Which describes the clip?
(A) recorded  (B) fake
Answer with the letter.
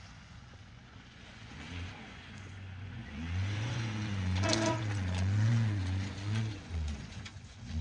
B